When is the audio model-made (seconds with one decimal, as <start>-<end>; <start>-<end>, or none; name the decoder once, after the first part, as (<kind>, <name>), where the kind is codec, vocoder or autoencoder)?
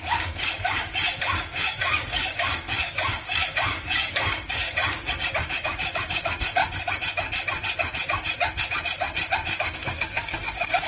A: 0.0-6.6 (codec, DAC); 9.6-10.9